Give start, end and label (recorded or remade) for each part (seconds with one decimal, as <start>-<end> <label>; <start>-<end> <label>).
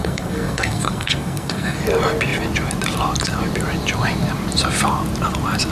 0.0-1.8 remade; 1.8-5.7 recorded